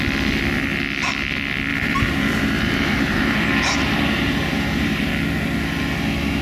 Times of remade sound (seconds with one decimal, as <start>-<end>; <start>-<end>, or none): 1.7-5.1